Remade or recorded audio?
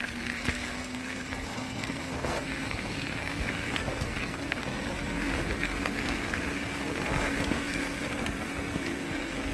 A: remade